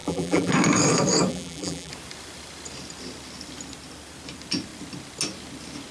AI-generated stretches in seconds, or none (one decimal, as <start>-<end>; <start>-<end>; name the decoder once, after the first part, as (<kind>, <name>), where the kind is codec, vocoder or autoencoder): 0.0-0.5 (vocoder, BigVGAN v2); 1.3-1.9